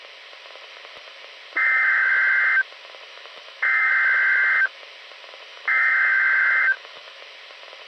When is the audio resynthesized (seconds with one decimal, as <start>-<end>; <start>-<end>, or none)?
1.6-2.1; 3.1-3.9; 5.5-7.2